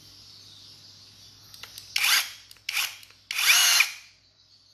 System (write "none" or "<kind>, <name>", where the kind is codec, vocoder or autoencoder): none